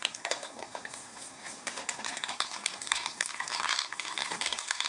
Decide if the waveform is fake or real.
fake